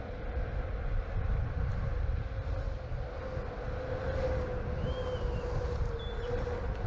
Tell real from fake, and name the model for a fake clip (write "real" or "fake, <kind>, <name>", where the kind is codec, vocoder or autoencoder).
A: real